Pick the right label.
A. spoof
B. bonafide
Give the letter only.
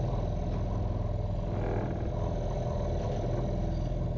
B